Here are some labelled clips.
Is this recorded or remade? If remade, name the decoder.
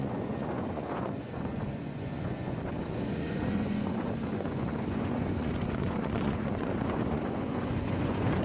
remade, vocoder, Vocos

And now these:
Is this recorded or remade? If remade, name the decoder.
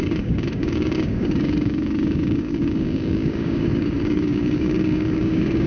remade, codec, DAC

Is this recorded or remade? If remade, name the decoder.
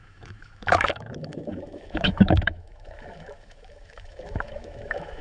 remade, autoencoder, DAC-VAE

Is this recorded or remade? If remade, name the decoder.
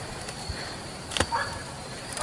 remade, vocoder, BigVGAN v2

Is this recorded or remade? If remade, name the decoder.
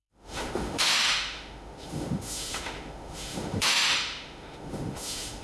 remade, autoencoder, DAC-VAE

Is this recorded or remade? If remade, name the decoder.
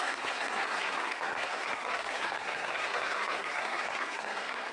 remade, codec, SNAC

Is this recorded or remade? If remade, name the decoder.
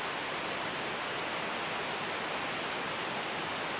recorded